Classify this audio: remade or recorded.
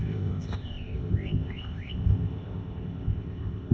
remade